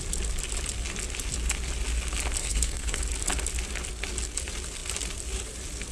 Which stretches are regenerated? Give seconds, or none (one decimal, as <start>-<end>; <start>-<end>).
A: 2.4-3.0